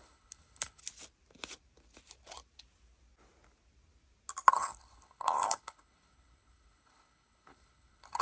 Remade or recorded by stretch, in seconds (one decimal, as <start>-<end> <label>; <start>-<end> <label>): 0.0-0.8 remade; 0.8-4.5 recorded; 4.5-8.2 remade